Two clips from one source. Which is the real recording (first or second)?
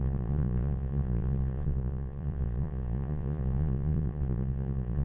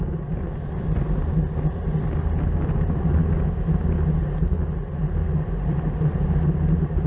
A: second